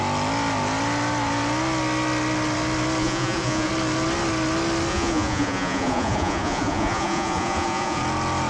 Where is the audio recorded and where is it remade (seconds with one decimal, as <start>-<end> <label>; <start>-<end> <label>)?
0.0-3.0 recorded; 3.0-3.7 remade; 3.7-4.9 recorded; 4.9-8.0 remade; 8.0-8.5 recorded